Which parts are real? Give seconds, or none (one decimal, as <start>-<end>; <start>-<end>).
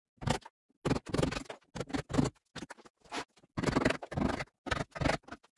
0.0-5.6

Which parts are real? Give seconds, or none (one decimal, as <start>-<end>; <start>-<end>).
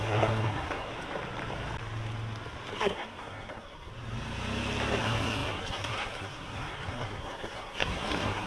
0.9-2.7; 3.9-5.0